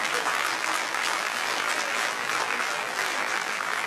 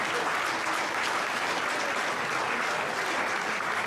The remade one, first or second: first